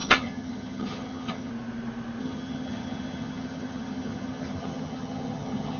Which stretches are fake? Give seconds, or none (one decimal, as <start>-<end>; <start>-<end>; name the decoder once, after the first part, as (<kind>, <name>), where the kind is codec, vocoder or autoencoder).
0.0-1.5 (vocoder, HiFi-GAN); 2.2-5.8